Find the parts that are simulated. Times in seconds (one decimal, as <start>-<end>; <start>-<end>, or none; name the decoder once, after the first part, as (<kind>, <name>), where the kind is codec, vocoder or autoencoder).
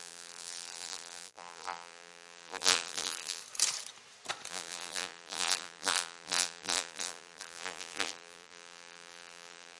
0.0-3.4 (vocoder, BigVGAN v2); 4.5-9.8